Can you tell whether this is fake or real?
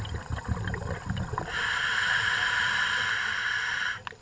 real